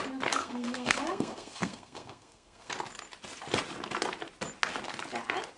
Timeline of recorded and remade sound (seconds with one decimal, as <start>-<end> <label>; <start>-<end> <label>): 0.0-0.4 recorded; 0.4-2.7 remade; 2.7-5.6 recorded